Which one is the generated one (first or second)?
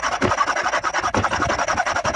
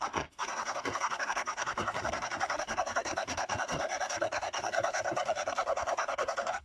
second